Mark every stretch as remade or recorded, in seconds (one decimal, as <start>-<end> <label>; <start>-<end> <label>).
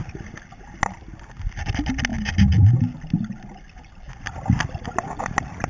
0.0-5.7 recorded